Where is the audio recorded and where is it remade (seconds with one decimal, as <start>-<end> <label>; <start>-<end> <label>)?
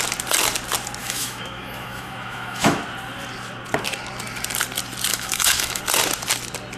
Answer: 0.0-1.0 recorded; 1.0-2.8 remade; 2.8-5.1 recorded; 5.1-5.8 remade; 5.8-6.8 recorded